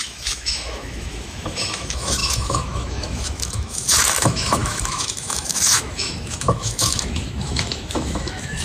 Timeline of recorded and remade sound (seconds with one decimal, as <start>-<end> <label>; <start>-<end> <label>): 0.0-8.6 remade